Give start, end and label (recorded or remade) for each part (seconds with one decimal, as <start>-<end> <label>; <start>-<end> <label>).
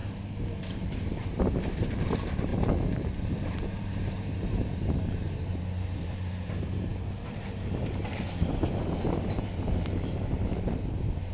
0.0-0.7 recorded; 0.7-11.3 remade